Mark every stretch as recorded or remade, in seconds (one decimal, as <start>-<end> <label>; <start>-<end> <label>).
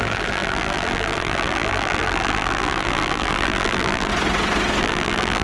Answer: 0.0-4.1 remade; 4.1-4.8 recorded; 4.8-5.4 remade